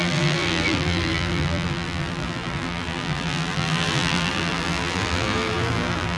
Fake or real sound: fake